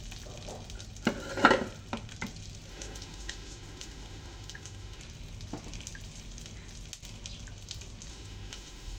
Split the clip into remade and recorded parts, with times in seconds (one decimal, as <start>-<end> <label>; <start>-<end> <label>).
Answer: 0.0-2.7 recorded; 2.7-5.0 remade; 5.0-8.1 recorded; 8.1-9.0 remade